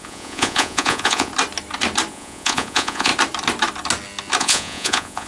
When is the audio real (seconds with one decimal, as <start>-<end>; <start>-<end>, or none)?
1.3-2.1; 3.1-4.4